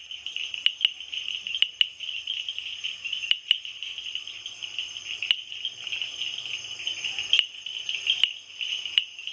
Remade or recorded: recorded